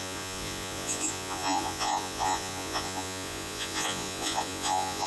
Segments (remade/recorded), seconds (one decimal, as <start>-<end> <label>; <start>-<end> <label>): 0.0-5.1 remade